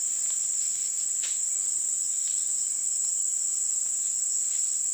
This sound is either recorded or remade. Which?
recorded